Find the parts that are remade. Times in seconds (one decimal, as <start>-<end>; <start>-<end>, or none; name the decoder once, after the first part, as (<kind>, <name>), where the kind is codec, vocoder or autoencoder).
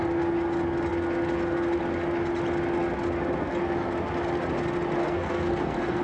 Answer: 5.0-6.0 (codec, SNAC)